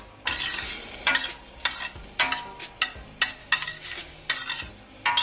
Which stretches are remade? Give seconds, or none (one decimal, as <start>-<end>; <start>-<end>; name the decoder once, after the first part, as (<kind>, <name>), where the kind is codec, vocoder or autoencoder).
3.4-4.3 (codec, DAC)